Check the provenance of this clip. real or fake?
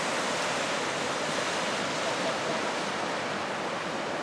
real